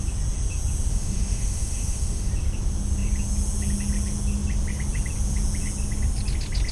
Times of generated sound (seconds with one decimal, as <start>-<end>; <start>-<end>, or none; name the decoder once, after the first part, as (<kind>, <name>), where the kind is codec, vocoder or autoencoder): 0.9-2.3 (autoencoder, DAC-VAE)